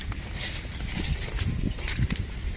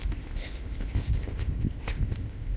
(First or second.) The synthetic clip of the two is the second